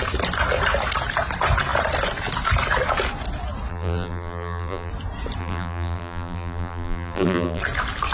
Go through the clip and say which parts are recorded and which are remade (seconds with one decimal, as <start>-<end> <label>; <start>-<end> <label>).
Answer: 0.0-3.7 recorded; 3.7-4.9 remade; 4.9-5.4 recorded; 5.4-7.6 remade; 7.6-8.1 recorded